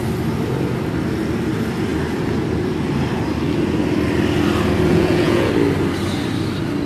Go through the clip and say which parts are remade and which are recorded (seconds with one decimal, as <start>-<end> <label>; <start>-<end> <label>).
0.0-4.9 recorded; 4.9-5.5 remade; 5.5-6.9 recorded